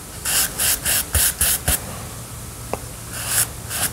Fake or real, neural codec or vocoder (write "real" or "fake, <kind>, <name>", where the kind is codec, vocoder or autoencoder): real